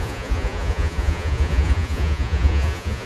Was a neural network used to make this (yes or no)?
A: yes